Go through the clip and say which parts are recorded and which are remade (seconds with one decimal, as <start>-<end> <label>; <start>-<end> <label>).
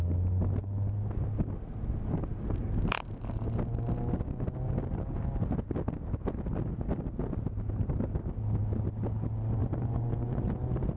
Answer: 0.0-9.6 recorded; 9.6-10.5 remade; 10.5-11.0 recorded